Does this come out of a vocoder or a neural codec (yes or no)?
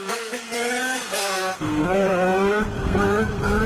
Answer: yes